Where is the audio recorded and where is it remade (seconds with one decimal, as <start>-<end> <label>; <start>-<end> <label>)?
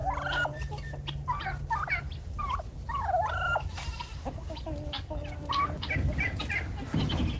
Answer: 0.0-7.4 recorded